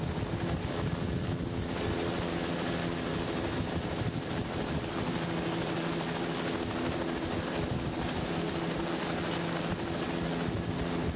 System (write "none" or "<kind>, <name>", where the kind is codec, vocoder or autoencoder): none